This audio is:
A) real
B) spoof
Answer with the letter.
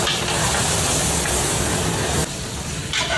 A